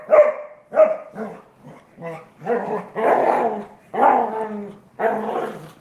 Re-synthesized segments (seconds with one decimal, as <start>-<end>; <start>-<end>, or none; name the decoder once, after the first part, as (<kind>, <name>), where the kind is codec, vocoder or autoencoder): none